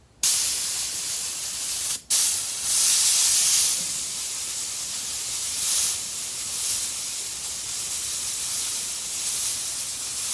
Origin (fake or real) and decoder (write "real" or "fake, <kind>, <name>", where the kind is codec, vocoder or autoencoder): real